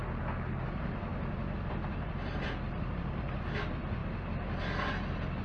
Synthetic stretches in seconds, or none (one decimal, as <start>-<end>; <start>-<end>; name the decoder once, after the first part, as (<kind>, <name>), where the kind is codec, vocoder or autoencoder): 0.7-1.1 (vocoder, BigVGAN v2); 2.8-5.4